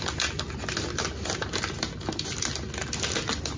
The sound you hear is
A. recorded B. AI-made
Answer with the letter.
A